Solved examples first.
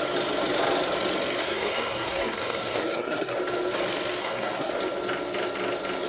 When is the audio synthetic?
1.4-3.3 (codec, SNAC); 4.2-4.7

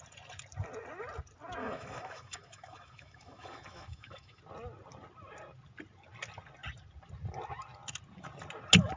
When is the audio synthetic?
1.6-4.4 (autoencoder, DAC-VAE)

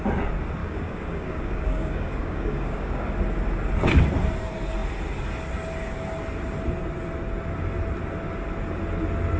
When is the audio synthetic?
0.6-3.1 (codec, DAC)

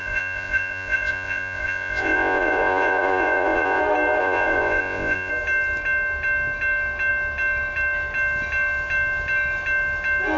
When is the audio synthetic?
0.0-3.8 (vocoder, Vocos); 4.2-5.3